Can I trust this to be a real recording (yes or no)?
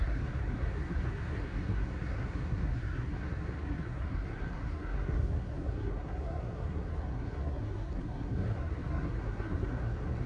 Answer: no